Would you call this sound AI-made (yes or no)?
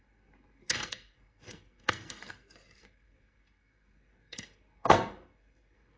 yes